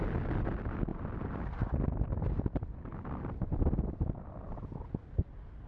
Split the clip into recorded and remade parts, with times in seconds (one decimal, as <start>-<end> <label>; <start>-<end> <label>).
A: 0.0-5.7 recorded